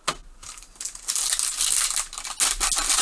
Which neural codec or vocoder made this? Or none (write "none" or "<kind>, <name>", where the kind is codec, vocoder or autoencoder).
none